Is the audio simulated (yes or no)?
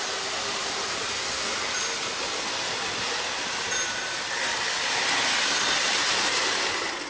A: no